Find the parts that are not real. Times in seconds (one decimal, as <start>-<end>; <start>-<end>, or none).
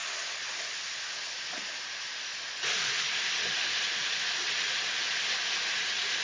none